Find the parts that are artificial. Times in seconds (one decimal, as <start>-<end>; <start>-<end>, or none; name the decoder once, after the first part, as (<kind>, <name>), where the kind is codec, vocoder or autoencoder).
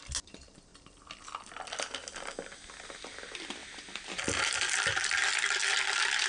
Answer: none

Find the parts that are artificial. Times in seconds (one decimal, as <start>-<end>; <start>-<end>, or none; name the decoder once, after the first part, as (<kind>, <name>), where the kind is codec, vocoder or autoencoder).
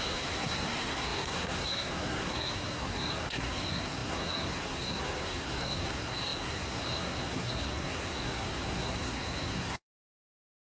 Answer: 0.0-10.8 (codec, SNAC)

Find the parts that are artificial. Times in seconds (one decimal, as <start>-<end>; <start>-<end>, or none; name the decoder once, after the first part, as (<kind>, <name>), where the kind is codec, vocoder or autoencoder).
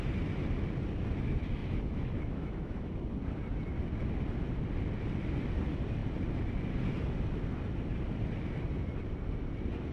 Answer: 1.6-2.9 (autoencoder, DAC-VAE)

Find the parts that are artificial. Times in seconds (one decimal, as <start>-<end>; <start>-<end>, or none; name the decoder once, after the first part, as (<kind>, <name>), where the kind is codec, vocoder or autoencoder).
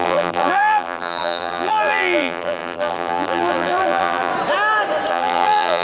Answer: 0.0-4.3 (vocoder, BigVGAN v2); 5.1-5.8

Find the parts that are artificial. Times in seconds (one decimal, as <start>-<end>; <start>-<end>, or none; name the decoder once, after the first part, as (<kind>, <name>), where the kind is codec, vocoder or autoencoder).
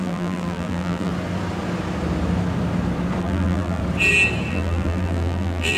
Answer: 0.0-1.1 (vocoder, BigVGAN v2); 3.2-3.8; 4.5-5.8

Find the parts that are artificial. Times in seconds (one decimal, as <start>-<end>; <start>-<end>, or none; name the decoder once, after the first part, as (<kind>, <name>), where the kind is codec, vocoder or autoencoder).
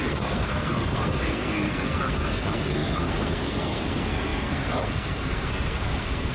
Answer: 0.0-6.3 (codec, SNAC)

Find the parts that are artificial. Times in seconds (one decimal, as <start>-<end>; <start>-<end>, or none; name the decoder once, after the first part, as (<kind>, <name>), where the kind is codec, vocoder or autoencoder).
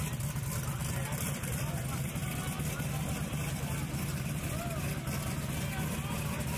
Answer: 0.8-1.8 (vocoder, BigVGAN v2)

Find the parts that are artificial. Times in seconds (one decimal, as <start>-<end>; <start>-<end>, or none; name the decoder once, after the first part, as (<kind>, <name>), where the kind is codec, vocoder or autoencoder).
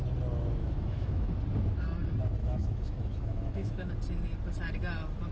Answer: 0.6-1.3 (autoencoder, DAC-VAE); 2.4-3.9